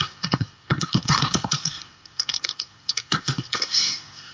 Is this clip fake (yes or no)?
yes